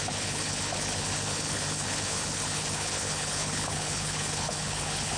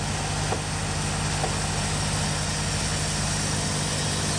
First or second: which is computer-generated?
first